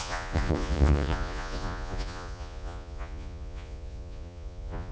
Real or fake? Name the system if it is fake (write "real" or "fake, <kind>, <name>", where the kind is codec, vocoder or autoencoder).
fake, vocoder, Vocos